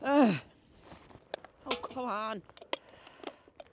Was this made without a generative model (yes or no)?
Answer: yes